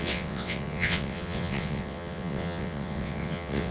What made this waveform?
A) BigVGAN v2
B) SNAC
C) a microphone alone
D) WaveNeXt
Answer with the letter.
D